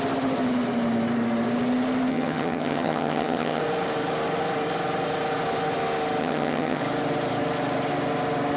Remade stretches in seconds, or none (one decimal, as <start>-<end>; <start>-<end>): 2.1-3.6; 6.2-6.8